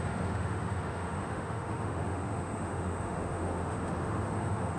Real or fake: fake